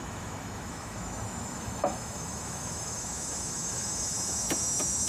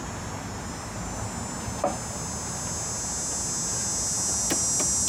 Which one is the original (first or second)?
second